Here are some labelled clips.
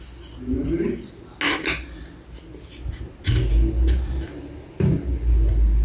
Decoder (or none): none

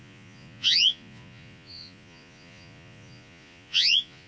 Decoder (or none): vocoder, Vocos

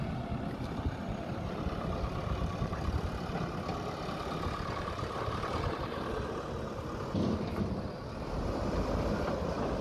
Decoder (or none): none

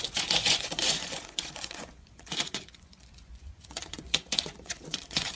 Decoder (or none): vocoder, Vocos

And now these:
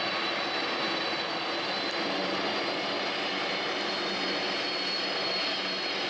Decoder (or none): none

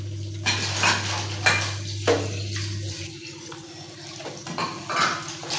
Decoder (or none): none